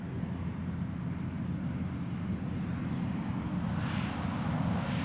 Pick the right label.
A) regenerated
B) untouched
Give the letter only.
B